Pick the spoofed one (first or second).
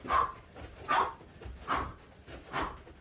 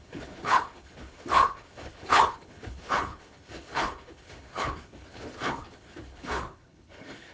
second